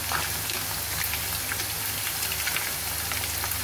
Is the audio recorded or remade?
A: recorded